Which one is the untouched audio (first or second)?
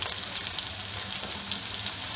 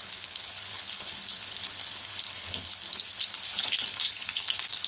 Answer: first